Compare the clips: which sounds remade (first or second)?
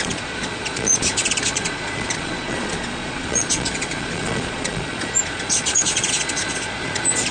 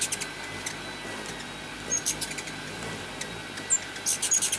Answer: first